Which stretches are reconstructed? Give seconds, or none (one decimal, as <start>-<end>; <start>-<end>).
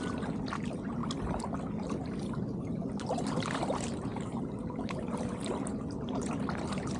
0.0-1.0; 2.4-7.0